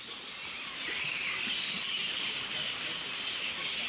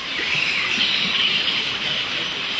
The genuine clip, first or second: first